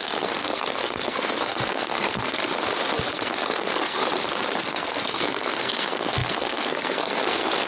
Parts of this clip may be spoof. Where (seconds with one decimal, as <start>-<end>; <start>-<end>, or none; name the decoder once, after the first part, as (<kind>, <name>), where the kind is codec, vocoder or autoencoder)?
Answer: 0.0-2.4 (codec, SNAC); 3.1-4.0; 4.6-7.7